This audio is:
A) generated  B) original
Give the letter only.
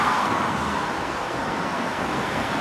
A